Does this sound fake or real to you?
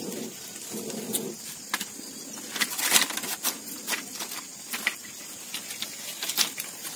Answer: real